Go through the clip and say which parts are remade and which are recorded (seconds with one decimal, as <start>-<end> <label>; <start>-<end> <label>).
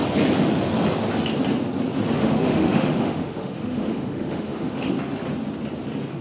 0.0-2.2 recorded; 2.2-4.9 remade; 4.9-6.2 recorded